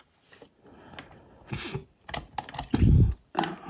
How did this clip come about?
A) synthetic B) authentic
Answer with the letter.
B